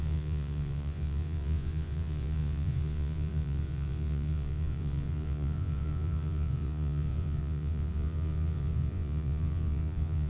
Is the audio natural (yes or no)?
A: no